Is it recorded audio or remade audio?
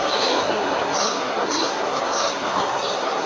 remade